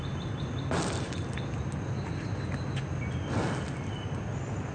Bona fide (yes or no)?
yes